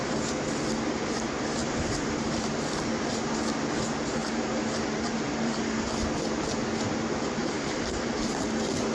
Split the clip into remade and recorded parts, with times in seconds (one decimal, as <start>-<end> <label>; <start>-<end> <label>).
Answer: 0.0-1.6 recorded; 1.6-2.5 remade; 2.5-4.2 recorded; 4.2-5.6 remade; 5.6-7.4 recorded; 7.4-8.9 remade